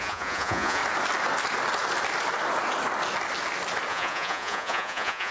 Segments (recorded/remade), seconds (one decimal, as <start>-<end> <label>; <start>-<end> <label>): 0.0-0.8 remade; 0.8-3.9 recorded; 3.9-5.3 remade